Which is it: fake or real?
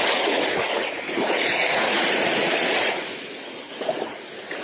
fake